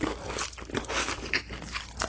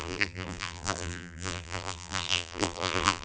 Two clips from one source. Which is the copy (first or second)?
second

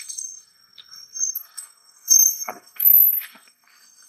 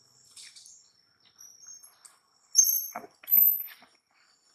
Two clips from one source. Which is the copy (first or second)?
first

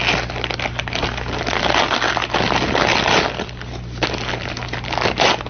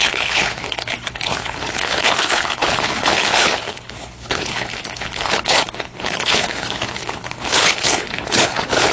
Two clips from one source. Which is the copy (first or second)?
second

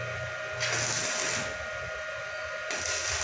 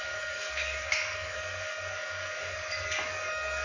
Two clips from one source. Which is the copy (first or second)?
second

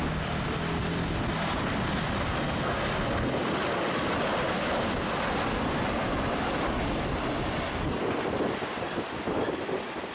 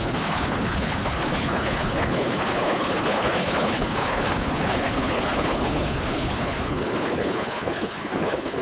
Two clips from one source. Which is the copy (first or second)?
second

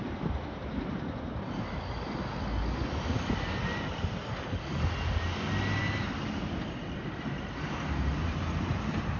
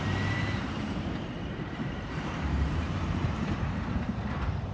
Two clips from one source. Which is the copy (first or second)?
second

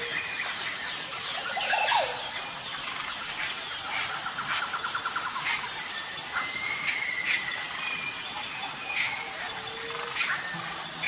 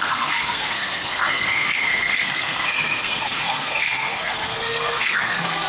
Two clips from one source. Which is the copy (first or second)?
second